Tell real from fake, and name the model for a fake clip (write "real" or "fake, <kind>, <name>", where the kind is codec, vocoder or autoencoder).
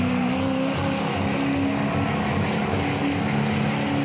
real